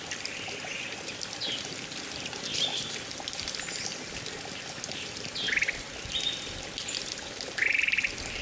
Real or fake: real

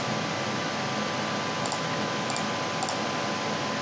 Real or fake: real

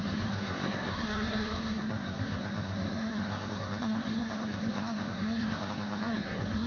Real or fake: fake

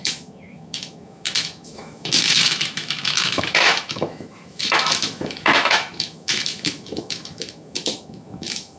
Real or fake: fake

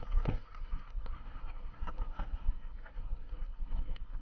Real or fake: fake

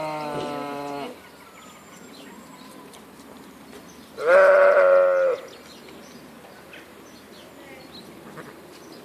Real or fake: real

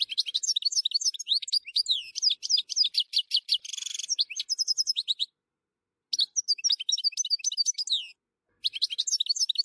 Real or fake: real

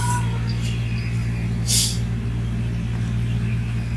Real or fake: real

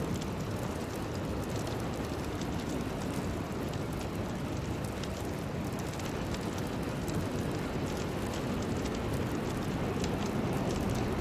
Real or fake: real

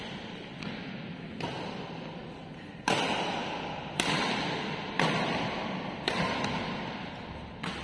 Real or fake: real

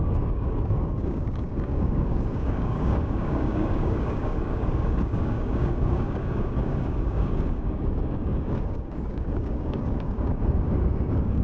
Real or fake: fake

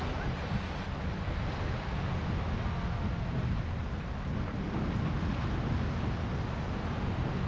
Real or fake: real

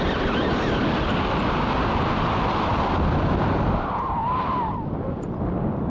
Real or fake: real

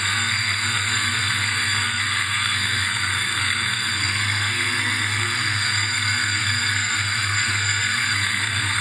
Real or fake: fake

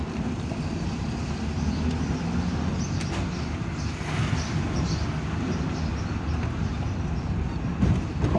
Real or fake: real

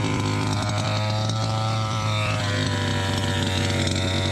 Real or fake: fake